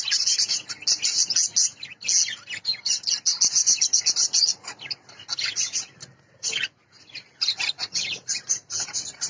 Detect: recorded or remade recorded